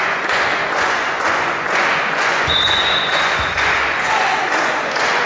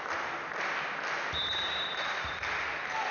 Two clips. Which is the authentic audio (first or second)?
second